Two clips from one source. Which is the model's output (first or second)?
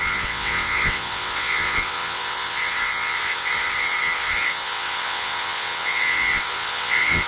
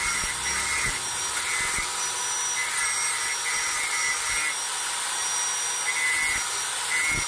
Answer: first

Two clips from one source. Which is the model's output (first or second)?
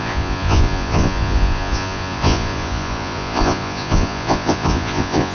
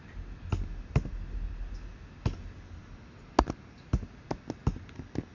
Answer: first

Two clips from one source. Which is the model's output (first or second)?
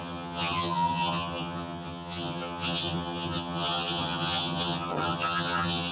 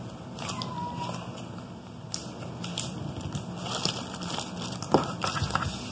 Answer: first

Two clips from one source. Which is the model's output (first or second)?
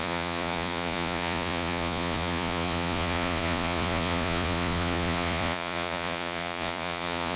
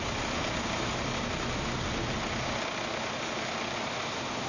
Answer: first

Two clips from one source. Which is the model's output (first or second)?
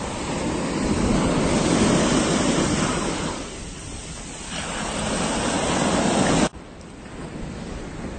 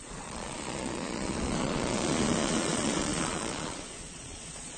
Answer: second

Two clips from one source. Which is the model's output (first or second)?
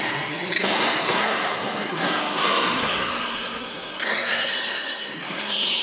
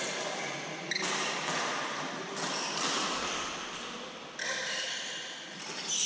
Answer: first